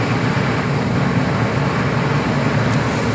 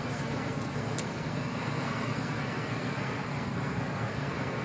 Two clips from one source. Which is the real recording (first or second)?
first